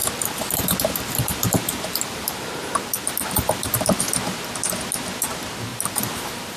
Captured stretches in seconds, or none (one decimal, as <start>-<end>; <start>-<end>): 4.0-5.7